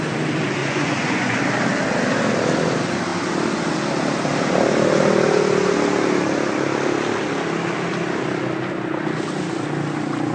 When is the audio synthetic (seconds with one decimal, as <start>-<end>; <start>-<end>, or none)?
0.6-1.4